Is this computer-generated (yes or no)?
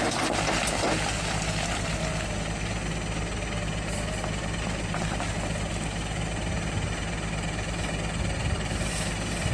no